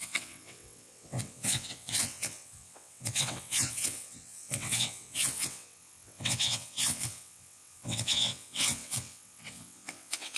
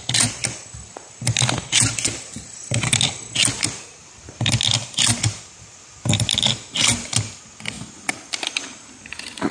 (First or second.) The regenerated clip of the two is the first